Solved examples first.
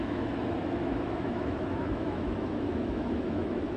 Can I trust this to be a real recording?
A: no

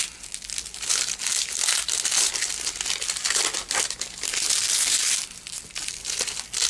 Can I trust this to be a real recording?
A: yes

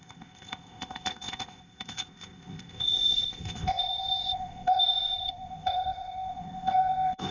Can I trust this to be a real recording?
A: no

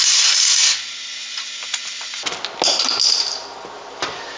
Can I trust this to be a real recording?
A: yes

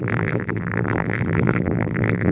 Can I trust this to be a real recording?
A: no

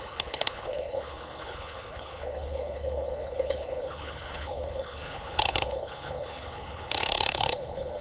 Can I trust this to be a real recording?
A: no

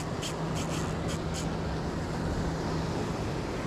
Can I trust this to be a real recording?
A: yes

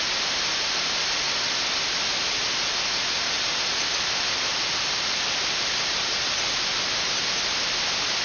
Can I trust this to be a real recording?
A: yes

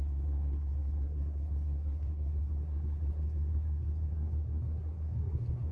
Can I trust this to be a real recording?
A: no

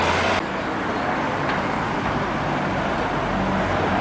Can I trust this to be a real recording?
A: yes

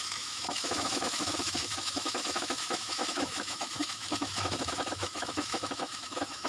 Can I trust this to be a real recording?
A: no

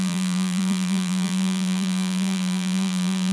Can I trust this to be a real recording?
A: no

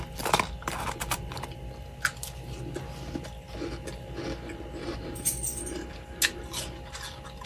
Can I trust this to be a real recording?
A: yes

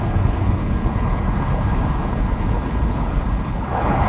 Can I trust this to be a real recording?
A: no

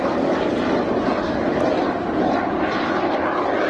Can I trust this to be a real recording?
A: yes